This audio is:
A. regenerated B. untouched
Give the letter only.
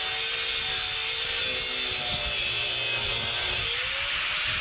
B